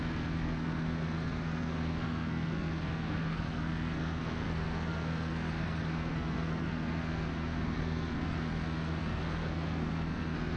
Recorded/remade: remade